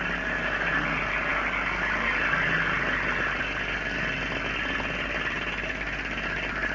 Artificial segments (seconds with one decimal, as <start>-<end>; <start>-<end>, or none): none